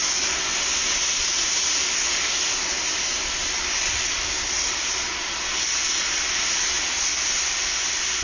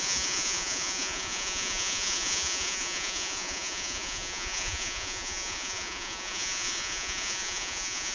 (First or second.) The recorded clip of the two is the first